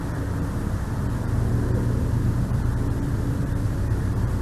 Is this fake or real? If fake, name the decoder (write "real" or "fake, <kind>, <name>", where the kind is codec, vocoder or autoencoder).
fake, vocoder, BigVGAN v2